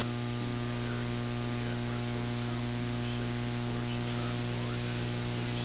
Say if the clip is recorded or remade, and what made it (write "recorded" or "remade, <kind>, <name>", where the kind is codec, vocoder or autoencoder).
recorded